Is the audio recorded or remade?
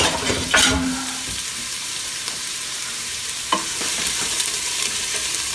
remade